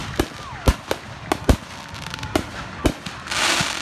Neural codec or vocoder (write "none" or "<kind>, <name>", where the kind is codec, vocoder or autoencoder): none